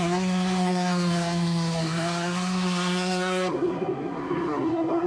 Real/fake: fake